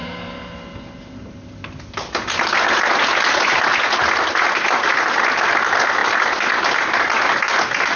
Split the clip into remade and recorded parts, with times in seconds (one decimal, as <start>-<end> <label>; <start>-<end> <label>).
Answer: 0.0-8.0 recorded